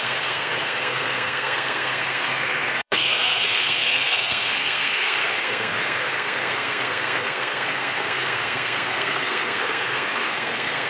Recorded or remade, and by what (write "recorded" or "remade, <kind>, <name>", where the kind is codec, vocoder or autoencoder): remade, codec, SNAC